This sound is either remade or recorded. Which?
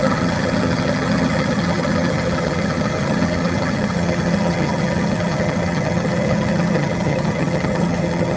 remade